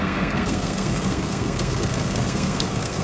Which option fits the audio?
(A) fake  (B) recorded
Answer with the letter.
A